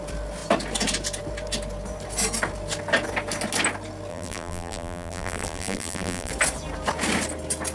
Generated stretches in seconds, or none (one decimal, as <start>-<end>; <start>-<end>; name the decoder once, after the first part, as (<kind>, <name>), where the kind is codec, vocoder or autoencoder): 4.1-6.3 (vocoder, BigVGAN v2)